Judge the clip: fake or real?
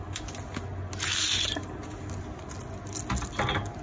real